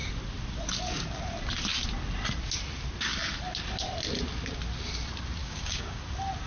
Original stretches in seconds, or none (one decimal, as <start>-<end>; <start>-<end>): 0.0-5.4; 6.0-6.5